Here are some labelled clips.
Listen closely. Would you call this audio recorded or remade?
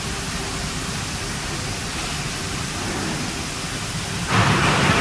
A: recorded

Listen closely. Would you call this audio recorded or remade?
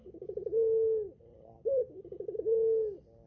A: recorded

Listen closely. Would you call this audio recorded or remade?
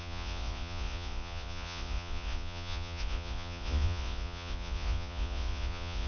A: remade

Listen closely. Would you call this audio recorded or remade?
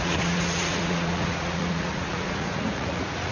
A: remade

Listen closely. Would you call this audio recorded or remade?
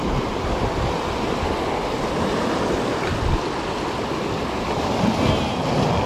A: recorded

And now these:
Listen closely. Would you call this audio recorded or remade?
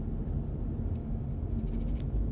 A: recorded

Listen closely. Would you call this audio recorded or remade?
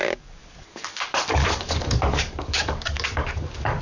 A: remade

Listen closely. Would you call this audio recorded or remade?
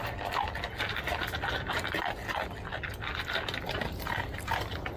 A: recorded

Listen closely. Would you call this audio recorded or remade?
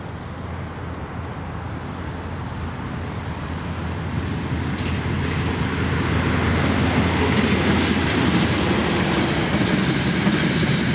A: recorded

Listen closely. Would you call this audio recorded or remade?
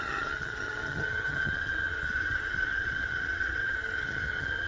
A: remade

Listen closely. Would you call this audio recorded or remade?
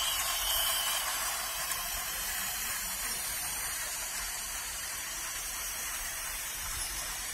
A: remade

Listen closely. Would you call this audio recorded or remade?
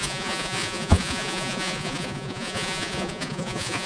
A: remade